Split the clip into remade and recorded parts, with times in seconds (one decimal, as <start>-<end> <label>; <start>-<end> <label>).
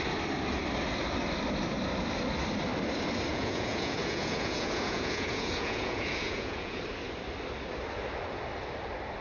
0.0-3.3 recorded; 3.3-6.8 remade; 6.8-9.2 recorded